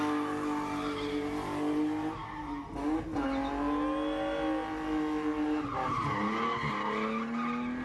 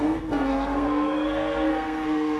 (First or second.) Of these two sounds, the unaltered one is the first